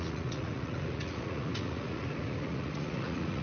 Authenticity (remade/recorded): remade